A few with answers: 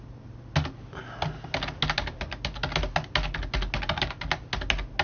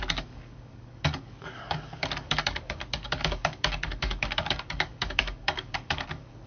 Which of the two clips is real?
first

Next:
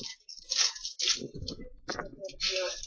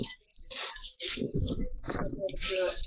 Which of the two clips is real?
first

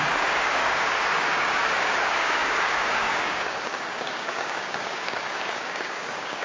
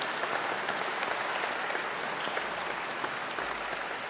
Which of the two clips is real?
second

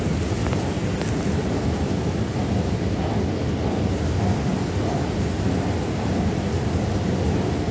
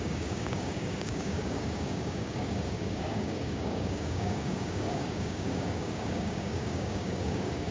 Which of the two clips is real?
first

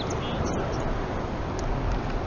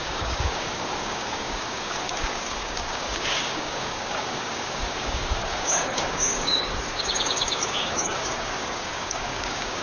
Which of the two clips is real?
first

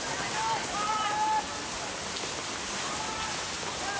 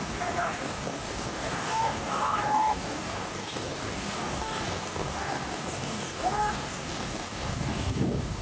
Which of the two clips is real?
first